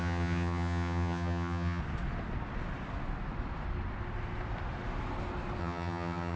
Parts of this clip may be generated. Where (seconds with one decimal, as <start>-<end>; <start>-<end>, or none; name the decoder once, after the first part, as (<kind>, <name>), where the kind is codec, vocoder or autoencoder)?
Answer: 0.0-1.8 (vocoder, HiFi-GAN); 5.6-6.4